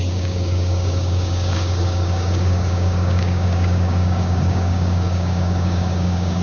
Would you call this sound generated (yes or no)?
yes